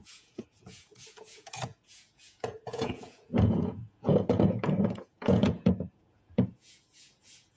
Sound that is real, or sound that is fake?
fake